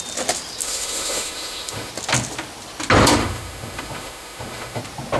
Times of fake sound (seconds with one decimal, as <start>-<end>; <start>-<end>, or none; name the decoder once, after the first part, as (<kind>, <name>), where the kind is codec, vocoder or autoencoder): 0.6-1.9 (autoencoder, DAC-VAE); 3.2-4.8